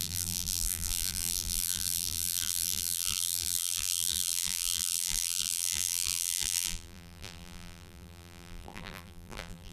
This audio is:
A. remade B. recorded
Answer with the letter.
A